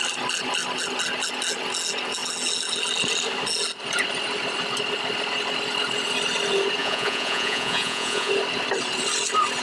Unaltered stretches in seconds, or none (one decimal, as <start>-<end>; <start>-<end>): 0.0-6.8; 8.3-9.6